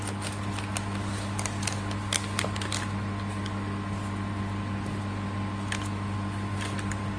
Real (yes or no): yes